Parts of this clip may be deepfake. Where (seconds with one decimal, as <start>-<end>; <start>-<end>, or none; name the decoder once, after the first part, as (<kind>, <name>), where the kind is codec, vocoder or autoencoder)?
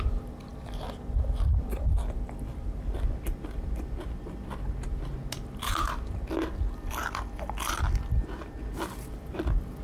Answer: 0.0-0.5 (vocoder, BigVGAN v2); 1.2-5.1; 8.9-9.8